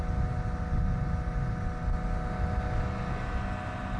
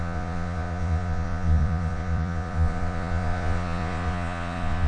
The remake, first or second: second